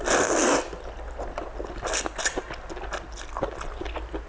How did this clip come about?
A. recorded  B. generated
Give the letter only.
A